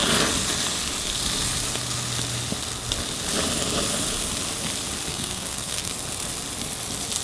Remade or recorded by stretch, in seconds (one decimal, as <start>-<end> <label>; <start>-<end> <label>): 0.0-5.1 recorded; 5.1-5.9 remade; 5.9-7.2 recorded